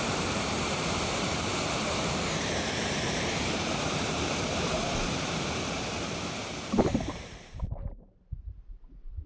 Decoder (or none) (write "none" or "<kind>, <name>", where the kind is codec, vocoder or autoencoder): vocoder, BigVGAN v2